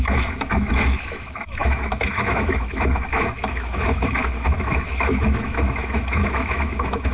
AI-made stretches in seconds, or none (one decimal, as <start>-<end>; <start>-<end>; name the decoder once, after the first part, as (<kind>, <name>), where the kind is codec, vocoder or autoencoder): 0.0-7.1 (autoencoder, DAC-VAE)